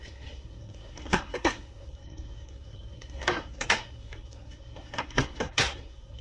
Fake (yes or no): yes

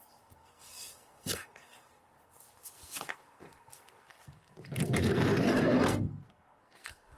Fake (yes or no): yes